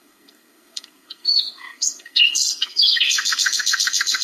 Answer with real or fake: fake